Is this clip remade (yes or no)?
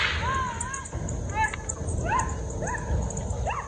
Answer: no